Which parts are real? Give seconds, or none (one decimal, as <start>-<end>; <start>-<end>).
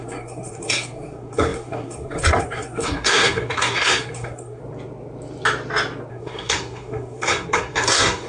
4.6-6.1